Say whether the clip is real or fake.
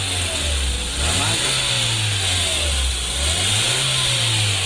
real